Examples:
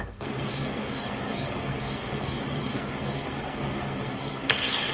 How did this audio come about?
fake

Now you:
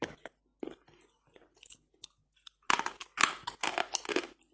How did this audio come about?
real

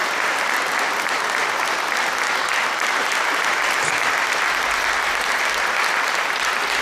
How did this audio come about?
real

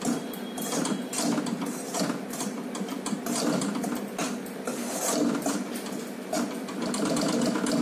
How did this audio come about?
real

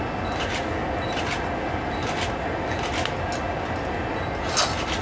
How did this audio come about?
real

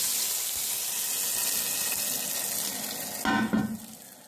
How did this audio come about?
real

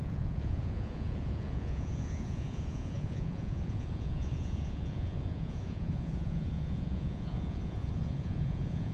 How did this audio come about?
fake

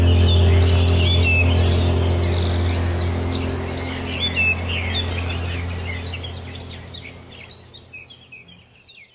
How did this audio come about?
real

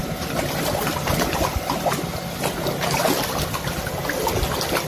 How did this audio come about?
real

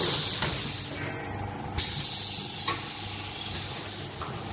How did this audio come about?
real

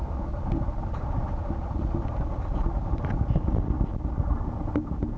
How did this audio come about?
real